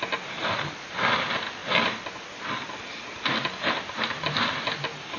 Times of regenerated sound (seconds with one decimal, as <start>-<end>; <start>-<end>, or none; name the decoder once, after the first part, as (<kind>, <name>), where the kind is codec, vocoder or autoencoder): none